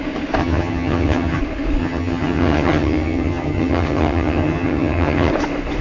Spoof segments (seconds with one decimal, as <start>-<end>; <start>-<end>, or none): 0.4-1.4; 1.8-5.3